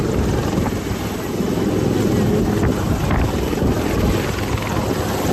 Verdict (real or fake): real